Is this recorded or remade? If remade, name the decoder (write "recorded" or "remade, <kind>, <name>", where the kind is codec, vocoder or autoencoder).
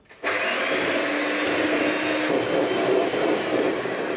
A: recorded